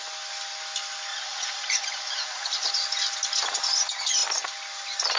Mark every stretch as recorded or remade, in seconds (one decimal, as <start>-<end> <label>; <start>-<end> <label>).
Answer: 0.0-1.1 recorded; 1.1-2.7 remade; 2.7-5.2 recorded